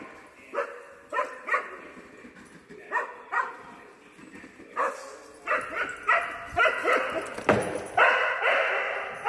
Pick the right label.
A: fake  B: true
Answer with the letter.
B